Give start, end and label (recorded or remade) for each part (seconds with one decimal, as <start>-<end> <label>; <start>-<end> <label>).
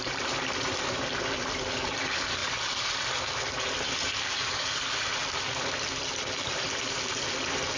0.0-7.8 recorded